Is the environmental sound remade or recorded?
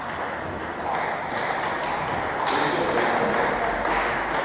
recorded